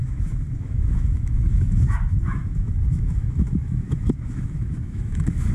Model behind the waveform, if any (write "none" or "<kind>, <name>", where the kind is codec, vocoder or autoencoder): autoencoder, DAC-VAE